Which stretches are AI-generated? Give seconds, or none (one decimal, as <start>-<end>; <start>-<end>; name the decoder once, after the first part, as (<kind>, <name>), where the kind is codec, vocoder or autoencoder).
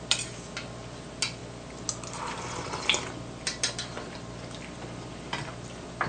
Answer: none